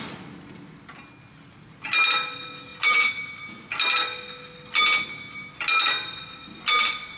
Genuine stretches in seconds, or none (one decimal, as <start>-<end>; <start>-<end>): 0.0-7.2